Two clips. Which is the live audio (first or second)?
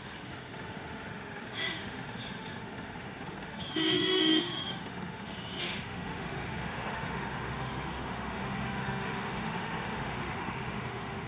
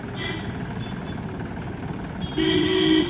second